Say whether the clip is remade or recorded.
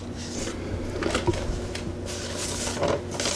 recorded